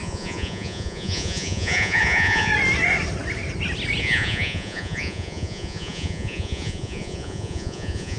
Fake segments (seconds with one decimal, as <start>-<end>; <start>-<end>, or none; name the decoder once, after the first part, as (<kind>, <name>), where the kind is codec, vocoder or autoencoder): 0.0-2.5 (vocoder, Vocos); 4.0-8.2